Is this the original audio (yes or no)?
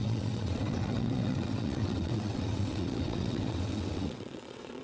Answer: no